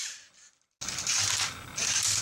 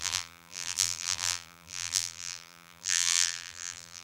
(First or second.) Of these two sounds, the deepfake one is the second